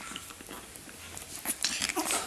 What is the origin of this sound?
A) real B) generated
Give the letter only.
A